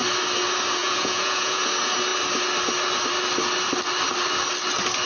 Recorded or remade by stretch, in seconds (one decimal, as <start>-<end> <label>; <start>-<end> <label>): 0.0-0.8 recorded; 0.8-1.6 remade; 1.6-5.1 recorded